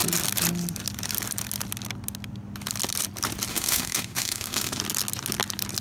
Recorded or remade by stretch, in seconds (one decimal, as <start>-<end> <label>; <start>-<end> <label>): 0.0-3.5 recorded; 3.5-4.8 remade; 4.8-5.8 recorded